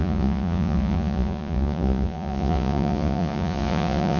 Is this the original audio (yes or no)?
no